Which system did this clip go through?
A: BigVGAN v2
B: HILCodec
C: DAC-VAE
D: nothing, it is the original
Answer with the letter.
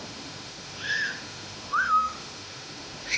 C